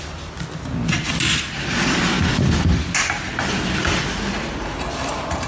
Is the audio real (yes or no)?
yes